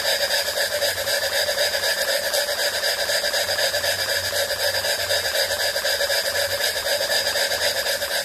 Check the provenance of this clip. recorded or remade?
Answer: recorded